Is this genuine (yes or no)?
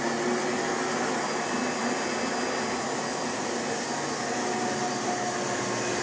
yes